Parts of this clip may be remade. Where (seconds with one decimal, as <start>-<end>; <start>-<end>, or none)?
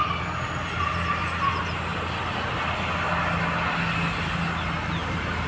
none